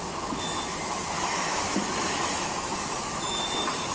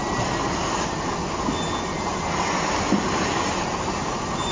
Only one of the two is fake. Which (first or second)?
first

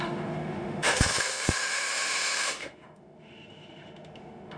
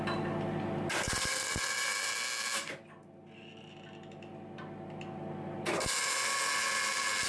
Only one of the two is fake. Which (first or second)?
first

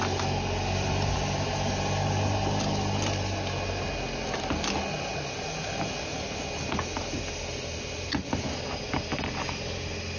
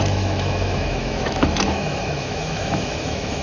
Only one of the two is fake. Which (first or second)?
second